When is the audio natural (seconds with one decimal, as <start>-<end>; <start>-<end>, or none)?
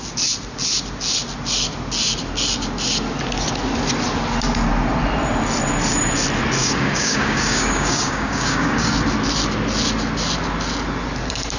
0.0-6.6; 8.9-11.6